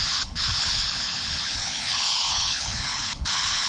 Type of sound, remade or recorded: remade